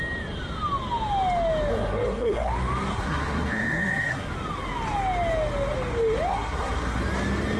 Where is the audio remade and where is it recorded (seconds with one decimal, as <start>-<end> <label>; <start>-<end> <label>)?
0.0-1.7 recorded; 1.7-2.5 remade; 2.5-2.9 recorded; 2.9-4.3 remade; 4.3-6.3 recorded; 6.3-7.0 remade; 7.0-7.6 recorded